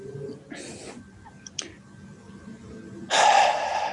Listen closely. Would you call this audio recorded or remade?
recorded